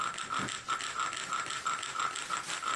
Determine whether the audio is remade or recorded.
recorded